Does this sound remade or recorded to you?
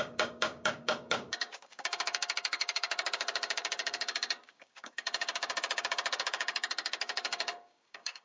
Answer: remade